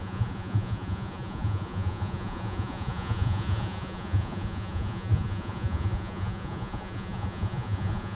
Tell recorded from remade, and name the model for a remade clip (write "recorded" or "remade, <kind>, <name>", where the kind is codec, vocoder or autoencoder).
remade, vocoder, Vocos